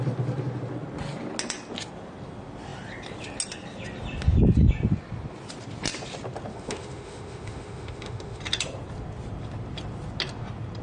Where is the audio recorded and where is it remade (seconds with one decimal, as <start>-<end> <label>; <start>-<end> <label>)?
0.0-6.5 recorded; 6.5-8.4 remade; 8.4-10.8 recorded